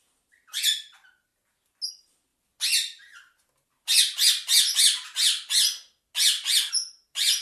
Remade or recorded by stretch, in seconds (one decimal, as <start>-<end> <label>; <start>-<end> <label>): 0.0-7.4 recorded